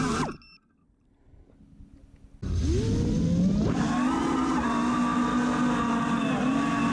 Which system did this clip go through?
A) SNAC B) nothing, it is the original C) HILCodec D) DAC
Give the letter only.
B